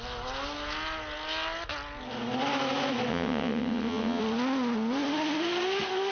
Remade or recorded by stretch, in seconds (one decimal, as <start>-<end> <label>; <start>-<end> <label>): 0.0-3.1 recorded; 3.1-4.2 remade; 4.2-6.1 recorded